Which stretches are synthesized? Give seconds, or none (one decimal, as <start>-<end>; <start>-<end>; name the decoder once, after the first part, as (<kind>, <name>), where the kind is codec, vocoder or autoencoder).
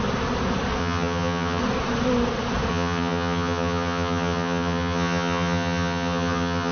0.8-1.6 (vocoder, HiFi-GAN); 2.7-6.7